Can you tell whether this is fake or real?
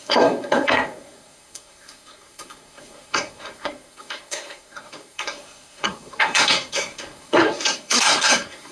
fake